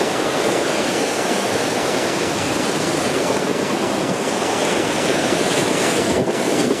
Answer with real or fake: fake